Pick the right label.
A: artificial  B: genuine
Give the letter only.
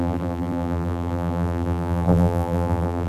A